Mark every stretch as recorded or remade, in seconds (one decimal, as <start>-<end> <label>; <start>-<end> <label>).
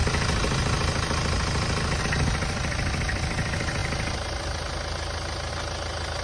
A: 0.0-6.2 recorded